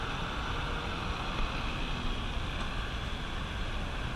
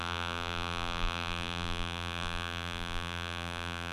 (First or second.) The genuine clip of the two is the first